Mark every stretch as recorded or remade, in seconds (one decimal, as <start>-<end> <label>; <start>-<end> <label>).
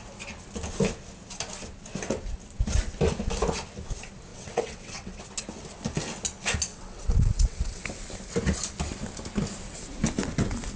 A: 0.0-4.3 recorded; 4.3-5.2 remade; 5.2-6.7 recorded; 6.7-7.8 remade; 7.8-10.8 recorded